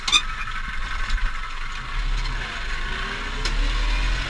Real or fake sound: real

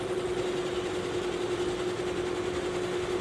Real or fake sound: real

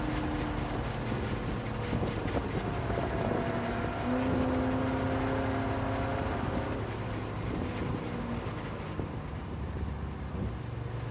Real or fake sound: real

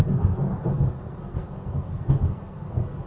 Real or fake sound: fake